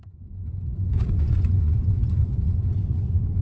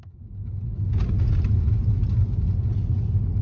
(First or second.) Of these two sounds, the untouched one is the second